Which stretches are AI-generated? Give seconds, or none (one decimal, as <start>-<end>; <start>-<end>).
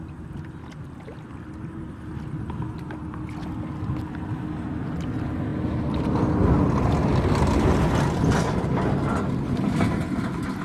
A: none